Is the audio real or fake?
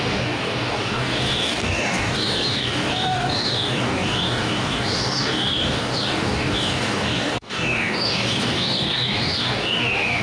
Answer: fake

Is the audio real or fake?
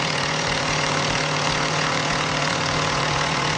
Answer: fake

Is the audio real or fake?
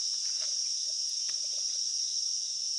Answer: real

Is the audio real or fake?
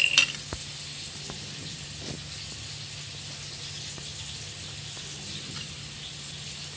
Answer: real